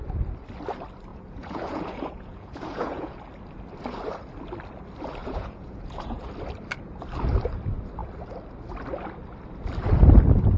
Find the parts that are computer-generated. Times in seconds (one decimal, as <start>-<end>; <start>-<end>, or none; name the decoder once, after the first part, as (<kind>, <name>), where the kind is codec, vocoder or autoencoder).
1.1-3.2 (vocoder, Vocos); 5.2-6.3